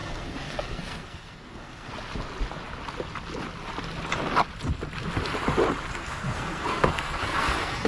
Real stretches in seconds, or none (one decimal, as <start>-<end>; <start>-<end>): 1.9-5.9